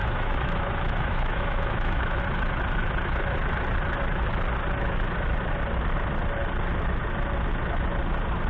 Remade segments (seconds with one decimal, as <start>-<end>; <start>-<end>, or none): 0.0-2.2